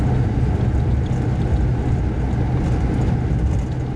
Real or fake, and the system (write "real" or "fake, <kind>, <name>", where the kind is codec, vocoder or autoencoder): real